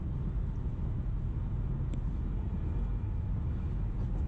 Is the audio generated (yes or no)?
no